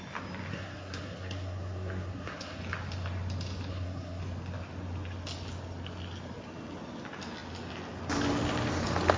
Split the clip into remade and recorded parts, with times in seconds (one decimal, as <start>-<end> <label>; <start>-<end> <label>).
0.0-0.5 recorded; 0.5-2.6 remade; 2.6-3.7 recorded; 3.7-4.2 remade; 4.2-9.2 recorded